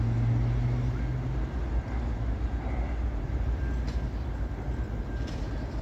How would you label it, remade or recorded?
recorded